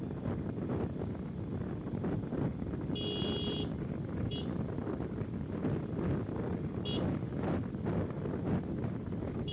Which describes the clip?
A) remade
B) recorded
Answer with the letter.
B